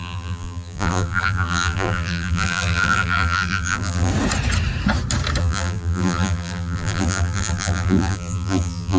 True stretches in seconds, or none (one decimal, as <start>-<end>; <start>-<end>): 4.1-5.4